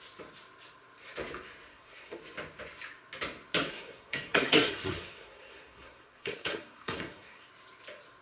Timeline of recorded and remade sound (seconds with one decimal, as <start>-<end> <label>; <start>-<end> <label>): 0.0-1.7 recorded; 1.7-2.2 remade; 2.2-3.7 recorded; 3.7-7.5 remade; 7.5-8.2 recorded